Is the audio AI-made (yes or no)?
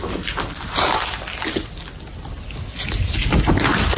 no